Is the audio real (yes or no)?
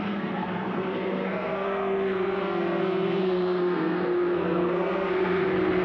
no